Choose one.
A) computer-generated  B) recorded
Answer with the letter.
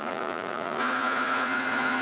A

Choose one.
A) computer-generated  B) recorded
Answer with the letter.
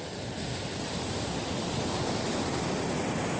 B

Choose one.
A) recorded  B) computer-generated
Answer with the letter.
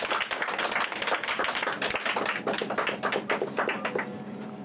A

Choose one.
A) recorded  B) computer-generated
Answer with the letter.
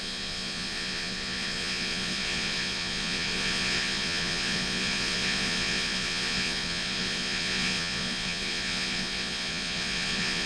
B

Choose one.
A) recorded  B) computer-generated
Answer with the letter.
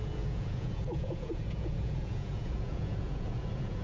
B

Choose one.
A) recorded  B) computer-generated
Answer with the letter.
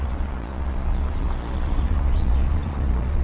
B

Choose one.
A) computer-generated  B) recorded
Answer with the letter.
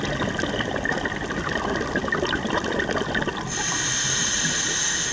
B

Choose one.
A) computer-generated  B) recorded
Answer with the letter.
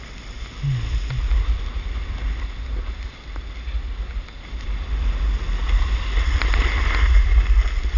B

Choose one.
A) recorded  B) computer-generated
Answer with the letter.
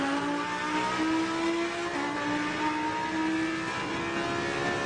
A